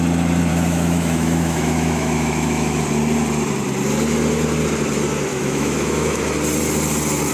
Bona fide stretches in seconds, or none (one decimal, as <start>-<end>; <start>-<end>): 0.0-0.5; 2.8-5.3; 6.2-7.3